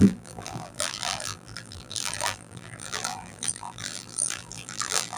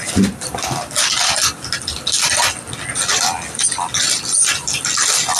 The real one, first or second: second